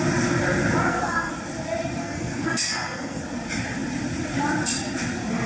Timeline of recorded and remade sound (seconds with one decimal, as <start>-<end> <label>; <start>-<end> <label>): 0.0-0.8 recorded; 0.8-1.3 remade; 1.3-2.0 recorded; 2.0-3.2 remade; 3.2-5.5 recorded